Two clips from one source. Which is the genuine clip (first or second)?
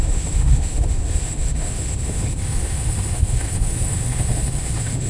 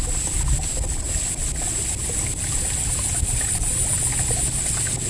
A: second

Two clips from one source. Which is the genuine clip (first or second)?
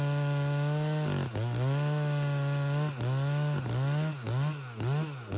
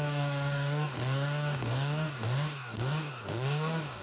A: first